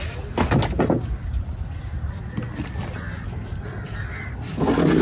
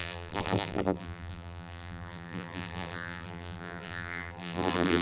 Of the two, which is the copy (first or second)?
second